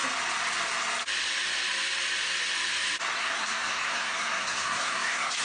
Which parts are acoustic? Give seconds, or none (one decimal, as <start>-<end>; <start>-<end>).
0.0-3.2